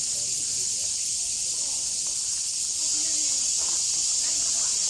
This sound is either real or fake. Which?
real